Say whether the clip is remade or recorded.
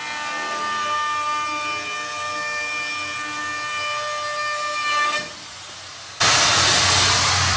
recorded